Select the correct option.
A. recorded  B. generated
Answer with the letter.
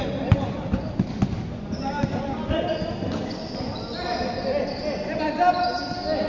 A